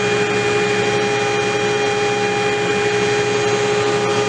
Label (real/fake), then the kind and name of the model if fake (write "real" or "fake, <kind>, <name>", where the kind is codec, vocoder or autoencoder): real